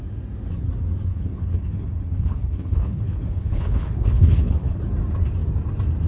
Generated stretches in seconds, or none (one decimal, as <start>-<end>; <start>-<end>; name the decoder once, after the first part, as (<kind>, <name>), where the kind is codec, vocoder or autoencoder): 1.1-4.8 (codec, HILCodec)